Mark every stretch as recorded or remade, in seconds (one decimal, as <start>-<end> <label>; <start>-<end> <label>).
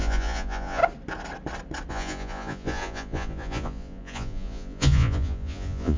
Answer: 0.0-0.8 remade; 0.8-1.9 recorded; 1.9-6.0 remade